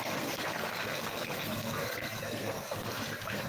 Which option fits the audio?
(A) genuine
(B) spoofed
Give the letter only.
B